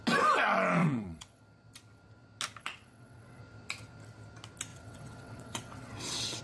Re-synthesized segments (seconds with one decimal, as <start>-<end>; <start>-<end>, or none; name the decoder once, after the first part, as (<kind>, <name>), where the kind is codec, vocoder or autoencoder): 0.8-1.4 (vocoder, WaveNeXt); 2.6-3.4; 4.7-6.4